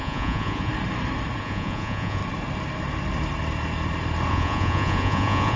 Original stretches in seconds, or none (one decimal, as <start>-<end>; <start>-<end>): 0.7-1.4; 2.2-4.3